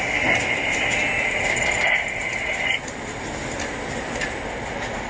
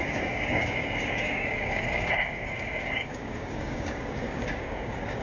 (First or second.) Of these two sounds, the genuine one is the first